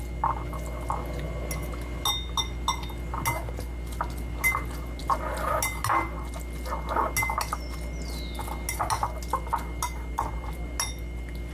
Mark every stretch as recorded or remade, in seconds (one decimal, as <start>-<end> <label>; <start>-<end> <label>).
0.0-11.5 recorded